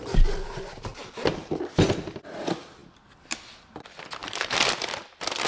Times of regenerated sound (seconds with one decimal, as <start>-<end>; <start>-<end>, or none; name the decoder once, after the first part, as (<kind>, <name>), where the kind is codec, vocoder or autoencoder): 0.9-1.6 (vocoder, BigVGAN v2); 4.2-4.7